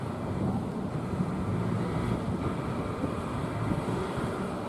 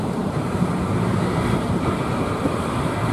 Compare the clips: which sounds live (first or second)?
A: first